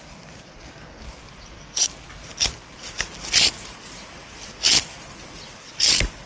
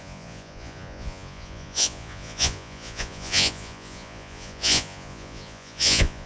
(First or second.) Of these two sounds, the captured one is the first